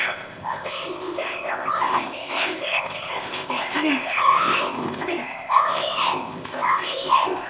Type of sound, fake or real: fake